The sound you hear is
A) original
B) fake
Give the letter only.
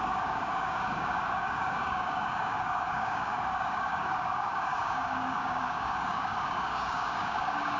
B